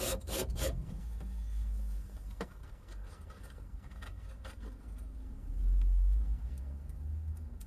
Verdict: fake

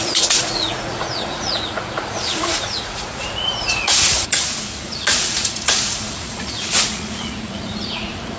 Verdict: fake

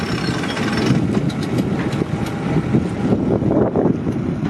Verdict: real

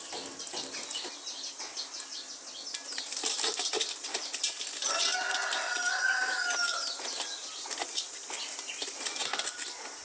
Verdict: real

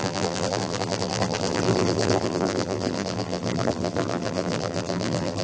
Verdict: fake